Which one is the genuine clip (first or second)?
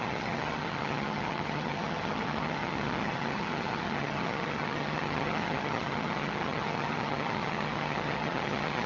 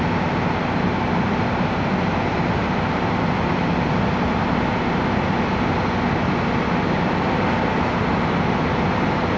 second